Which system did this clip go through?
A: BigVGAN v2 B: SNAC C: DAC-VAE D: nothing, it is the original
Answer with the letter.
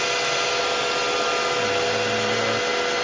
D